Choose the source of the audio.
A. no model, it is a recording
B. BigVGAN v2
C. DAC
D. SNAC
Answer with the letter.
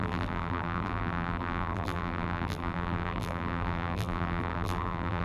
B